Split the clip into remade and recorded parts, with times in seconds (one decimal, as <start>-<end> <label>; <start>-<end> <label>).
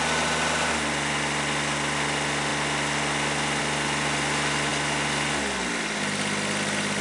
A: 0.0-7.0 recorded